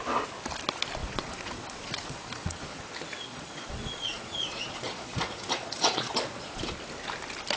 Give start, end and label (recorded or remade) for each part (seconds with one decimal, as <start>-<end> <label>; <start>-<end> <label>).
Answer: 0.0-1.0 recorded; 1.0-2.8 remade; 2.8-3.3 recorded; 3.3-6.7 remade; 6.7-7.6 recorded